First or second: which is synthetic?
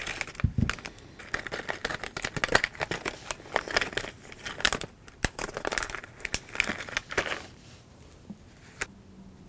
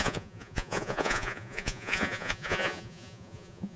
second